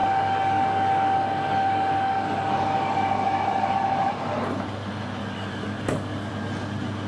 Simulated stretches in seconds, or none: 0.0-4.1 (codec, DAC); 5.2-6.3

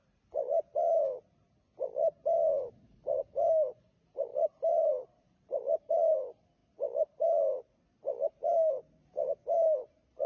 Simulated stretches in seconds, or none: 4.3-5.9 (vocoder, BigVGAN v2)